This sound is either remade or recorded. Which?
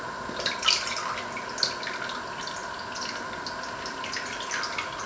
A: recorded